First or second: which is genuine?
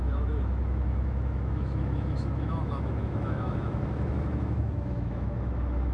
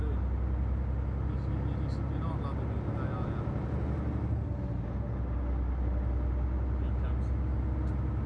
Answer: second